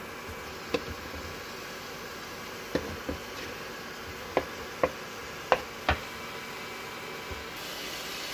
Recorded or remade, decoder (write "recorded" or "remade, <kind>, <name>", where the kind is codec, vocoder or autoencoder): recorded